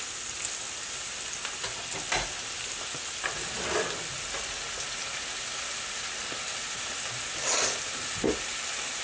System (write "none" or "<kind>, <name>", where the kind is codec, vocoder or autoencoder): none